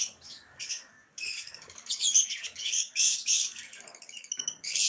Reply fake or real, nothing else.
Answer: fake